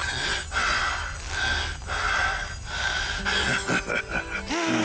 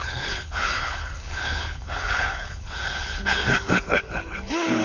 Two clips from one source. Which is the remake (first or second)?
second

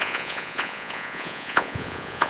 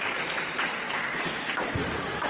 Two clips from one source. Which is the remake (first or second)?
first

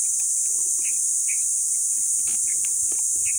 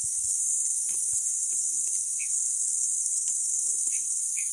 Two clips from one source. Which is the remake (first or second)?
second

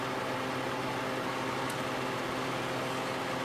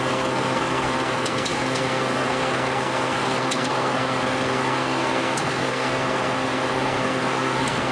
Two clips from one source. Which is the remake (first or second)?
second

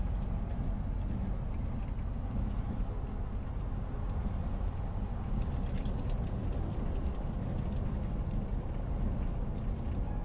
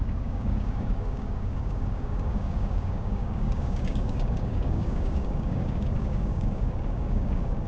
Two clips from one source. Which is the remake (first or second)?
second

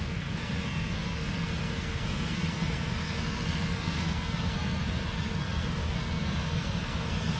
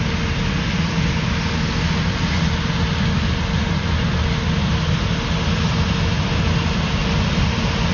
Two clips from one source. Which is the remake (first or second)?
first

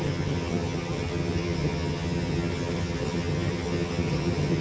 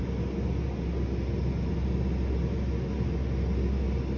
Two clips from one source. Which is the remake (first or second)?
first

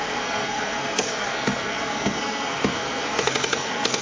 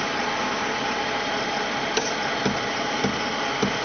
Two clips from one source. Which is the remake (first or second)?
first